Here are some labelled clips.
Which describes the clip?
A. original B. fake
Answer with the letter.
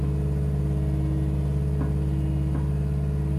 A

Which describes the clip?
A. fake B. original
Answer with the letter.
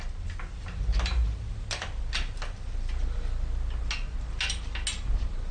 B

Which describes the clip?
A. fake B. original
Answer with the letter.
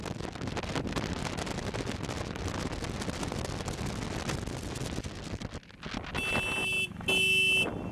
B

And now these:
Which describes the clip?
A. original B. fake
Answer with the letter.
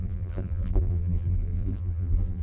B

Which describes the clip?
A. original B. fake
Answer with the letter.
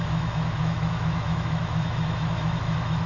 B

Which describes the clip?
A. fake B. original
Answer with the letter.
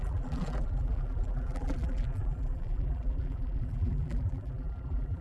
A